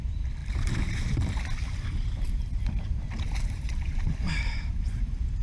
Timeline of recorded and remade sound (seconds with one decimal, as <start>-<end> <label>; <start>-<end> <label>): 0.0-0.4 recorded; 0.4-1.2 remade; 1.2-1.6 recorded; 1.6-4.8 remade; 4.8-5.4 recorded